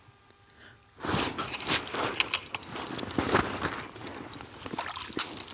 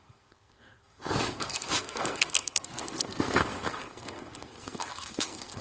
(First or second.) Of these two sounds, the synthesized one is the second